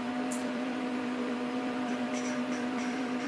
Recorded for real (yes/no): no